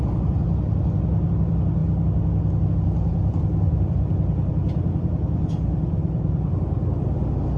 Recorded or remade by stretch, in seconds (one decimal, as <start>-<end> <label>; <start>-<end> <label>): 0.0-3.1 recorded; 3.1-4.5 remade; 4.5-6.0 recorded; 6.0-6.5 remade; 6.5-7.6 recorded